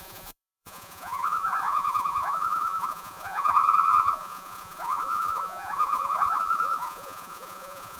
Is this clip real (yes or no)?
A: no